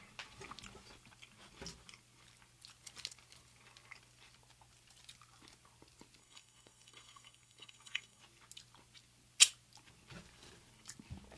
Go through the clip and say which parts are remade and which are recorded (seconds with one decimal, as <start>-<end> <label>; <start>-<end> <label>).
0.0-6.2 recorded; 6.2-8.2 remade; 8.2-11.4 recorded